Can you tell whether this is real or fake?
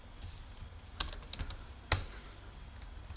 real